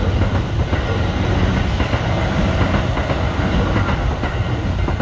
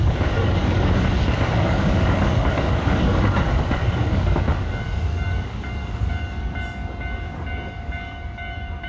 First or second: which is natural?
first